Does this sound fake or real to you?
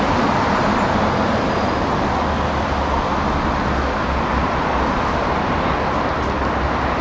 real